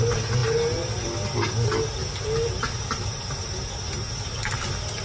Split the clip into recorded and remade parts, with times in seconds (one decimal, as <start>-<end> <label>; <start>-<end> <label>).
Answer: 0.0-5.0 recorded